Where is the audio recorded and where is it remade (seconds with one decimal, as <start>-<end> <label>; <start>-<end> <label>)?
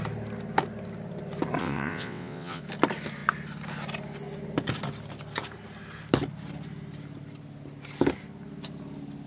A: 0.0-1.6 recorded; 1.6-2.6 remade; 2.6-9.3 recorded